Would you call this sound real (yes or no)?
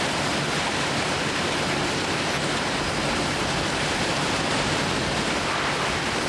yes